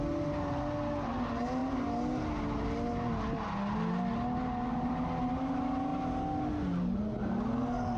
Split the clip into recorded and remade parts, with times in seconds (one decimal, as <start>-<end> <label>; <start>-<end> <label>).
0.0-8.0 recorded